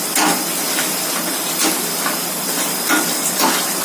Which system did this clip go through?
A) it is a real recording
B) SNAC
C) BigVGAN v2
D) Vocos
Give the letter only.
A